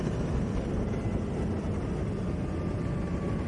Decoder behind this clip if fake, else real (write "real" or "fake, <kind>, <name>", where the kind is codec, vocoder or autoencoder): real